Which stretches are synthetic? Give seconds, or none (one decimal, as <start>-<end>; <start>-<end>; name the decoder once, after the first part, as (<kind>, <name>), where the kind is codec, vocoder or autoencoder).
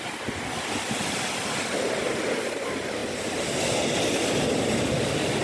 none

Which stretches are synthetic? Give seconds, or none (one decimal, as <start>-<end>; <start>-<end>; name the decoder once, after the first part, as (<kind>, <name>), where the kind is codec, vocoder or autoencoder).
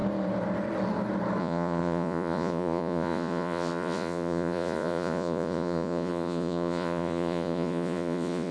1.4-8.5 (vocoder, Vocos)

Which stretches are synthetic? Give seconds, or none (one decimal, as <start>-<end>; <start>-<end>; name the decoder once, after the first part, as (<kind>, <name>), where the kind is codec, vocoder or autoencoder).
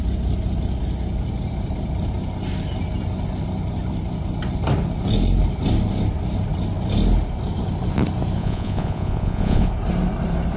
8.4-9.7 (vocoder, Vocos)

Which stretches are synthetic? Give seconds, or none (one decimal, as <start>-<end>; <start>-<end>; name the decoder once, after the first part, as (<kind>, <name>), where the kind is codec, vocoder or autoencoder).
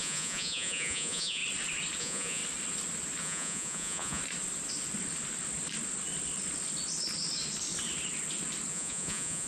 0.0-1.4 (vocoder, Vocos); 2.0-2.4; 3.2-4.2; 8.7-9.5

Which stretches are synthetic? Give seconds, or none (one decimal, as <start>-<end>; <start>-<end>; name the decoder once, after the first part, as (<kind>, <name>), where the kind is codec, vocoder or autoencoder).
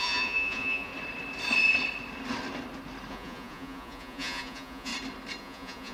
0.0-0.9 (vocoder, Vocos); 3.1-4.9; 5.4-5.9